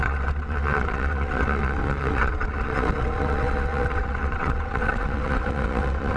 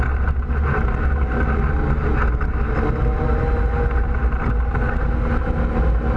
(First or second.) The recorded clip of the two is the second